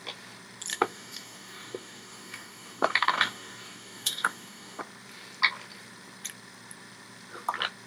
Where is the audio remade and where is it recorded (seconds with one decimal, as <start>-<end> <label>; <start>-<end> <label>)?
0.0-0.7 recorded; 0.7-4.8 remade; 4.8-7.9 recorded